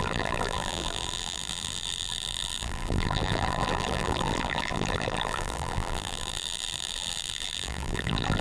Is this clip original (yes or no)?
no